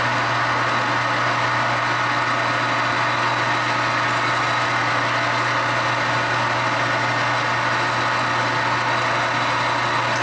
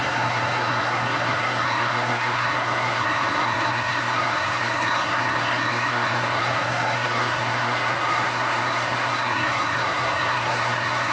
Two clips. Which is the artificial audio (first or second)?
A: second